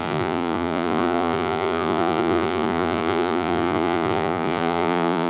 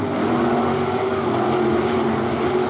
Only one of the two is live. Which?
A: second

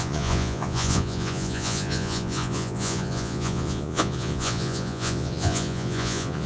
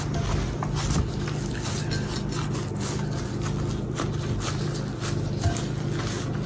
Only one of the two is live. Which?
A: second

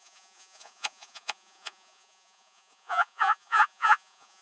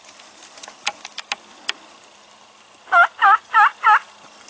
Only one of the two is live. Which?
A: second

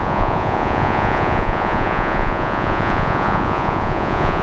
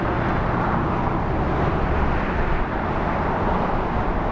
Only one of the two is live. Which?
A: second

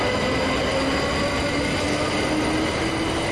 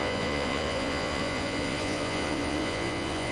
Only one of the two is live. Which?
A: first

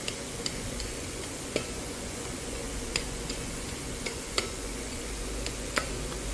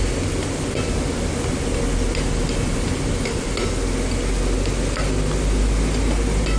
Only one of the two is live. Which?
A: second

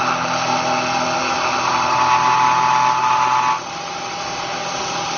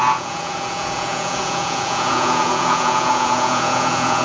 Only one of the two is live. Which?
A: first